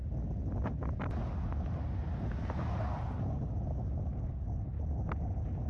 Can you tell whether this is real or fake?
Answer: real